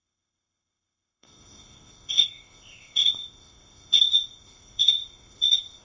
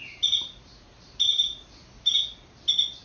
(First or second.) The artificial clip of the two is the first